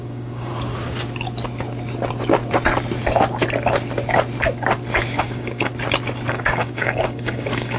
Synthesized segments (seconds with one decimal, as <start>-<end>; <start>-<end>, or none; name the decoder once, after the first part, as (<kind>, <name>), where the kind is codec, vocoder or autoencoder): 0.0-0.5 (codec, DAC); 5.2-5.7; 6.3-7.8